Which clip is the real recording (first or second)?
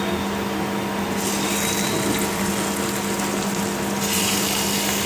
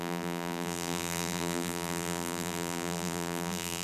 first